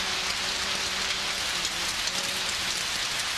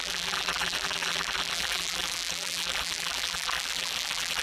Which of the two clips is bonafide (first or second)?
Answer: first